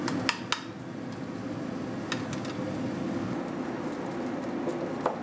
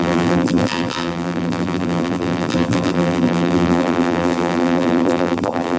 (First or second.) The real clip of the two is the first